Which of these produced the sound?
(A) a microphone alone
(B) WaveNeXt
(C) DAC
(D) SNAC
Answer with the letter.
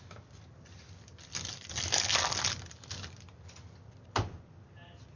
A